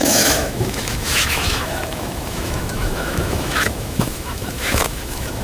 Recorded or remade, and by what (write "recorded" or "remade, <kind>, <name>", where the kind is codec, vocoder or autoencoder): remade, autoencoder, DAC-VAE